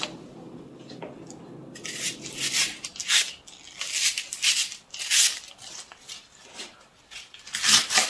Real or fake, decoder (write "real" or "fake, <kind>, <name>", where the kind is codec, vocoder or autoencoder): real